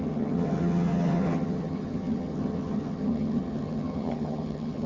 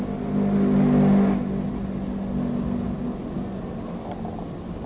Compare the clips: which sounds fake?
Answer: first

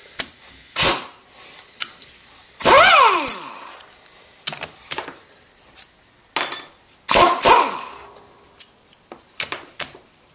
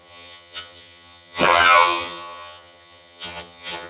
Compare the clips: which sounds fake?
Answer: second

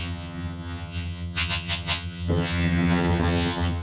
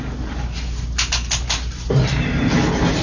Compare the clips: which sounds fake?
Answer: first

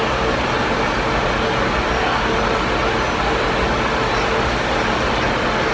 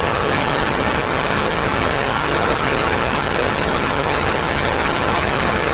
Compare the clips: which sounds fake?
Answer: second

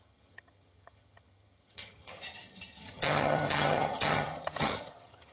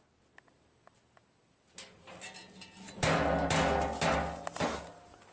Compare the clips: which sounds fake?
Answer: first